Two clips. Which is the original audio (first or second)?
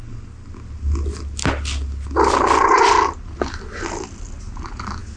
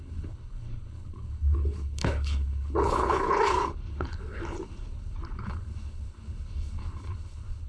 first